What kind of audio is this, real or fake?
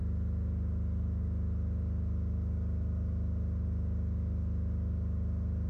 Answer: real